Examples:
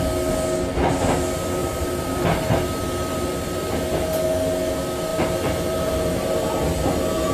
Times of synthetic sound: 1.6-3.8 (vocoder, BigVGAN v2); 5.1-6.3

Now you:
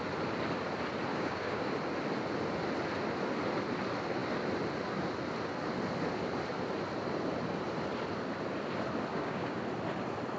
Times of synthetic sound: 1.1-1.7 (codec, DAC); 9.1-9.6

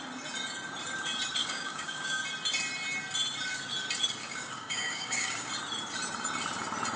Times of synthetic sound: 1.4-2.2 (codec, DAC); 4.2-5.5

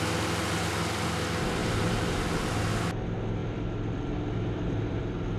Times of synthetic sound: 1.6-2.4 (vocoder, BigVGAN v2); 3.4-5.0

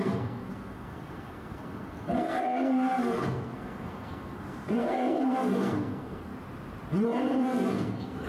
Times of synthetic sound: 0.0-6.3 (codec, SNAC); 7.2-8.3

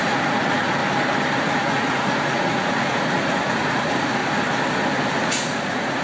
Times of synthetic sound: 0.0-0.8 (vocoder, Vocos); 1.4-4.2; 5.1-6.0

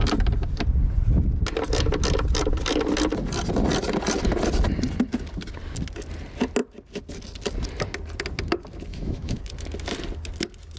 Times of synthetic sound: 8.9-9.4 (autoencoder, DAC-VAE)